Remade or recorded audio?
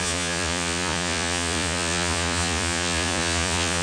remade